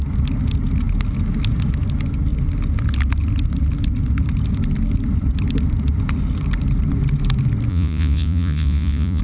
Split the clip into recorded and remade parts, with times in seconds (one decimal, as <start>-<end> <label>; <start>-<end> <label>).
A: 0.0-7.7 recorded; 7.7-9.2 remade